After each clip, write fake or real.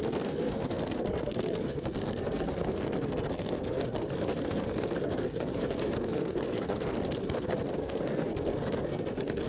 fake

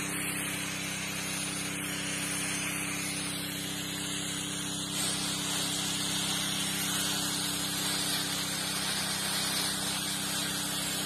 real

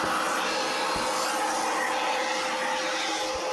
real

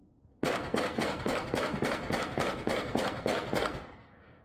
fake